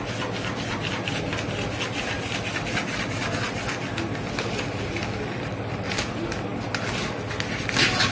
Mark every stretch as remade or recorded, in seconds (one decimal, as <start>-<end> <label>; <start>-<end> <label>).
0.0-8.1 recorded